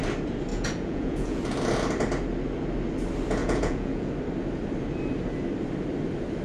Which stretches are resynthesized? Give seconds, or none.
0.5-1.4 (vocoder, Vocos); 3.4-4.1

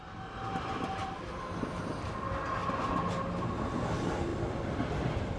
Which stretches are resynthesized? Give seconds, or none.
4.3-5.4 (vocoder, BigVGAN v2)

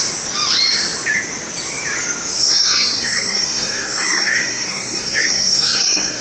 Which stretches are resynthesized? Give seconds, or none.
2.4-6.2 (codec, SNAC)

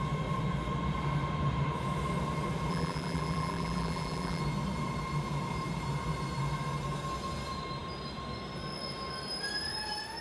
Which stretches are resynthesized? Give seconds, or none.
2.7-4.4 (vocoder, BigVGAN v2)

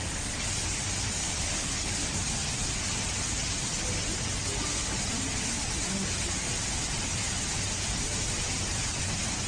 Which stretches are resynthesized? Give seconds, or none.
1.2-1.9 (codec, HILCodec)

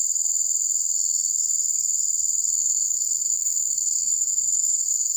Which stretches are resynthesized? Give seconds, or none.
2.6-5.2 (codec, SNAC)